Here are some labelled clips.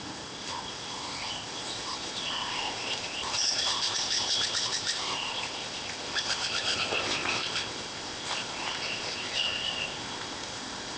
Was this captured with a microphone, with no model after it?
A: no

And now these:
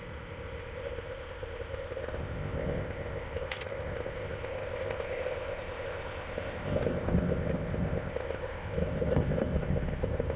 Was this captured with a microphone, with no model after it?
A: no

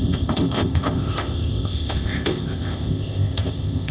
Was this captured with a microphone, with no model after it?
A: no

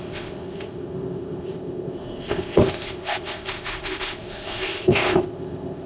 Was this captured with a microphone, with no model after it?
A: no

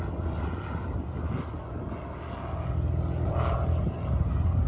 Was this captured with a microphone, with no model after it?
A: yes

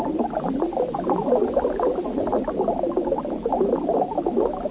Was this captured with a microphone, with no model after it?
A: yes